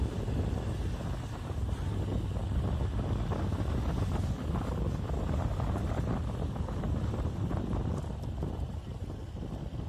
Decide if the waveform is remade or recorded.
recorded